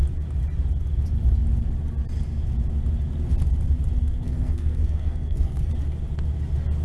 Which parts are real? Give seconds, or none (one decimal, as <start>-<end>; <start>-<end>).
0.0-4.0; 5.7-6.8